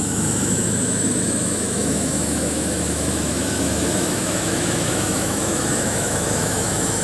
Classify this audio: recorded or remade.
remade